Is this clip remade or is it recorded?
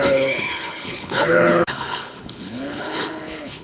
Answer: remade